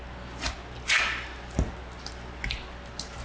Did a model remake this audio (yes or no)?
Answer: no